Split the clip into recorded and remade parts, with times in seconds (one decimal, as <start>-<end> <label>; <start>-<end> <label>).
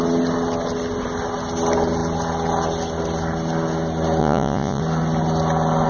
0.0-4.2 recorded; 4.2-4.8 remade; 4.8-5.9 recorded